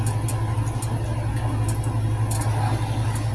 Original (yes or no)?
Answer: yes